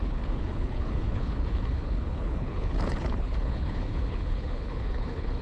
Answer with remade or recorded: remade